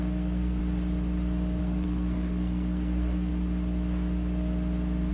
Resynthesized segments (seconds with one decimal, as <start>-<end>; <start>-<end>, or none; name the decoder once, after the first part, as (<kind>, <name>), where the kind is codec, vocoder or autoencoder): 0.0-0.6 (codec, SNAC); 1.6-3.3

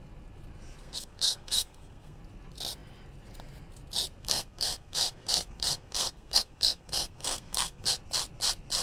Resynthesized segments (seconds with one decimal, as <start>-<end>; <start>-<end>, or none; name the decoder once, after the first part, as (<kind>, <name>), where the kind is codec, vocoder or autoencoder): 0.8-2.2 (codec, SNAC); 4.2-7.9